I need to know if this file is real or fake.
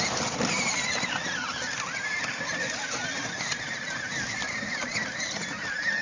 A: real